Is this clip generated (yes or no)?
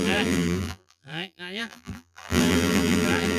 yes